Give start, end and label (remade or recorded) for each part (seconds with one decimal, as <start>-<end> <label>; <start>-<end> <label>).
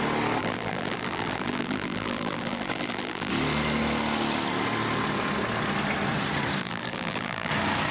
0.0-0.4 recorded; 0.4-3.3 remade; 3.3-6.6 recorded; 6.6-7.5 remade; 7.5-7.9 recorded